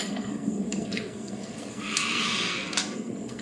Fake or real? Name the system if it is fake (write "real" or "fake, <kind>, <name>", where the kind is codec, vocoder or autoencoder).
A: fake, codec, SNAC